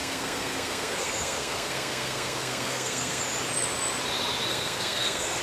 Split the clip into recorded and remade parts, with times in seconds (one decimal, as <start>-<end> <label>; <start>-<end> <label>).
0.0-3.2 remade; 3.2-4.5 recorded; 4.5-5.4 remade